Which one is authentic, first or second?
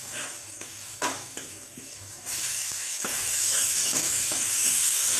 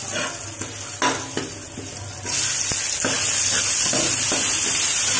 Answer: second